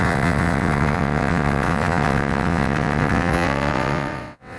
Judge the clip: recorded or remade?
remade